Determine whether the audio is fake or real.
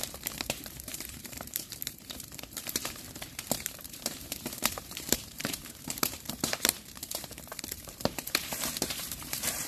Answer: fake